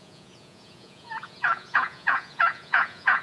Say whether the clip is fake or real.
fake